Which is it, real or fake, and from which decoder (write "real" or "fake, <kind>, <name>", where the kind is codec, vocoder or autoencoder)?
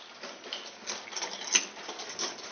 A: real